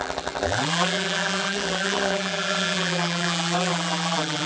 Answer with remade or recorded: remade